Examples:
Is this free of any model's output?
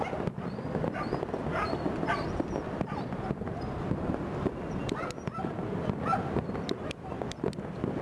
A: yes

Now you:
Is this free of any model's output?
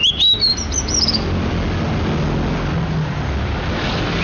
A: yes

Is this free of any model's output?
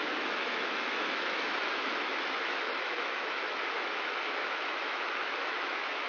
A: no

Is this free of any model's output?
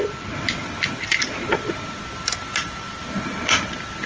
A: yes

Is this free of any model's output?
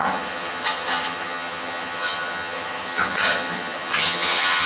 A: no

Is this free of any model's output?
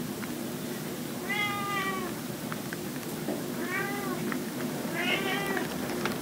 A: yes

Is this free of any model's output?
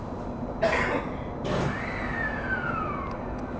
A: yes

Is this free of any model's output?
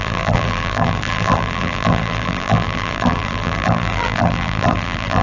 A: no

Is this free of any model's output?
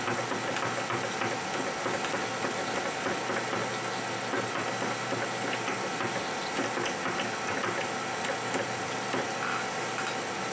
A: yes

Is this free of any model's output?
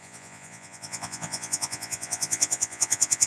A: no